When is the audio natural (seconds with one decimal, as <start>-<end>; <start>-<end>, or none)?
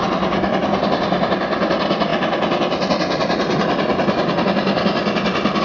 0.0-5.6